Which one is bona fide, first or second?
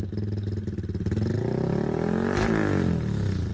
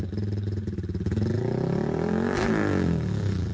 first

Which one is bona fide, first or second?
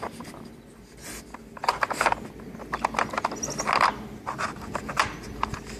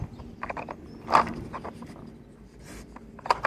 first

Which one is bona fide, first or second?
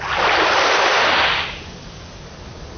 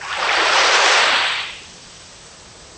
first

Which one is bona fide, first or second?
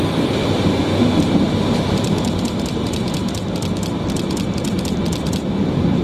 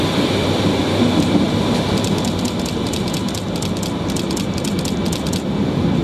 second